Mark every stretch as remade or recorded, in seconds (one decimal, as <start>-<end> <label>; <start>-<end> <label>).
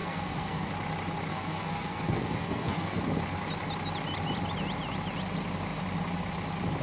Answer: 0.0-0.7 remade; 0.7-1.3 recorded; 1.3-3.0 remade; 3.0-6.8 recorded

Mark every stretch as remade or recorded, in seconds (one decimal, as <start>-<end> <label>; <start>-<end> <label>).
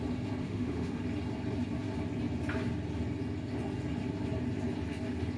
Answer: 0.0-0.4 recorded; 0.4-1.0 remade; 1.0-5.4 recorded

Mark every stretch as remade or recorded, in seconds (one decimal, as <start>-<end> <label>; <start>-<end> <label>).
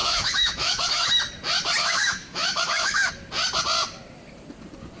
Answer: 0.0-1.1 remade; 1.1-1.8 recorded; 1.8-3.1 remade; 3.1-5.0 recorded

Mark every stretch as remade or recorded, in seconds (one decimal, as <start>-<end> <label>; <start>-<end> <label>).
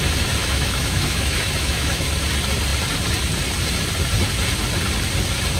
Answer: 0.0-0.4 recorded; 0.4-2.0 remade; 2.0-5.6 recorded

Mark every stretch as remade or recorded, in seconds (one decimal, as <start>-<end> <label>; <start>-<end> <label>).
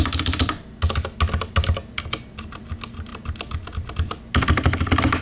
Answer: 0.0-5.2 recorded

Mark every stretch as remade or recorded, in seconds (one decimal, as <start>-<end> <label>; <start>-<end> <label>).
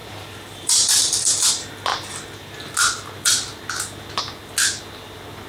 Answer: 0.0-1.5 remade; 1.5-5.5 recorded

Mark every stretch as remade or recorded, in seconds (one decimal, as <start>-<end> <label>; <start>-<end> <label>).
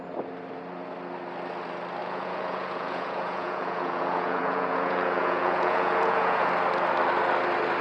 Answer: 0.0-2.0 recorded; 2.0-6.5 remade; 6.5-7.8 recorded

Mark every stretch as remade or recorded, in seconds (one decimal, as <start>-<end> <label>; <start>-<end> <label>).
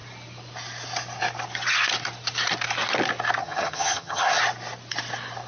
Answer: 0.0-3.4 recorded; 3.4-4.4 remade; 4.4-5.5 recorded